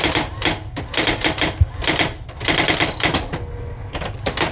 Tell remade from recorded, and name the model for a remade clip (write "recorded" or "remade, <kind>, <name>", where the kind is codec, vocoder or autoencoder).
recorded